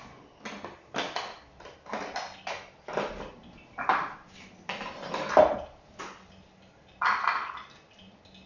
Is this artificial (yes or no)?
no